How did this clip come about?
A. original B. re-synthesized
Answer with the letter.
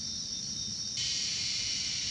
B